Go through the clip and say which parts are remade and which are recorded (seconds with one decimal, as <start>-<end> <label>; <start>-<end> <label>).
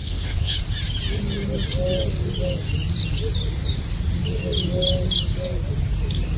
0.0-0.6 remade; 0.6-6.4 recorded